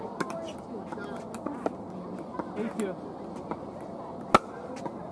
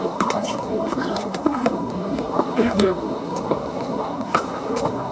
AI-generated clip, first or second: second